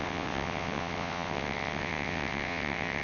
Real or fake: fake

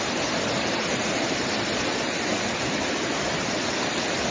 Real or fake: real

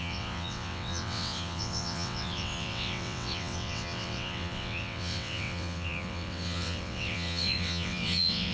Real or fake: fake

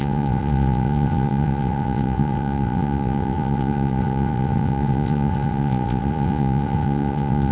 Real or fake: fake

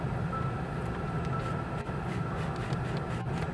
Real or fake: real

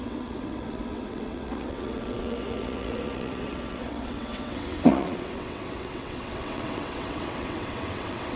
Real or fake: fake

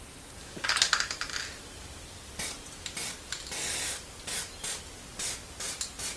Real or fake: real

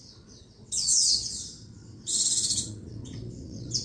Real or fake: fake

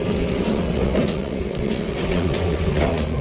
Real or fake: fake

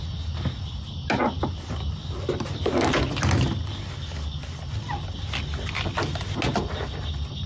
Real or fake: real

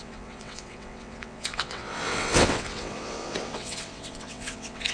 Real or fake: fake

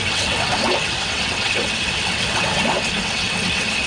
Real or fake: fake